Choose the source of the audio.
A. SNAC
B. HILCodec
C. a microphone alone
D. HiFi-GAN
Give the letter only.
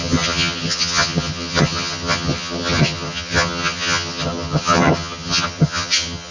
D